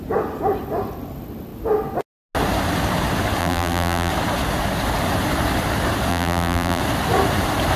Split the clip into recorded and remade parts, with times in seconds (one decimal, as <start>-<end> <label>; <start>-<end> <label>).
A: 0.0-3.4 recorded; 3.4-4.1 remade; 4.1-6.1 recorded; 6.1-6.8 remade; 6.8-7.8 recorded